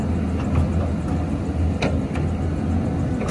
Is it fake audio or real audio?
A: real